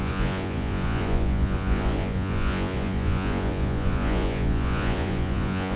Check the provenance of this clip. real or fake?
fake